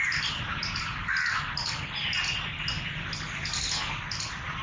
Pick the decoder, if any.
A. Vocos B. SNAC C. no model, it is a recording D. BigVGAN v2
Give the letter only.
C